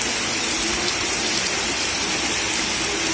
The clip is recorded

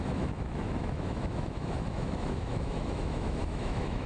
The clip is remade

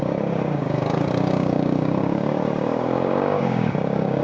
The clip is remade